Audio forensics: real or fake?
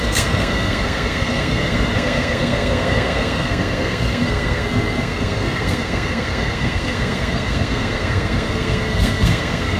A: fake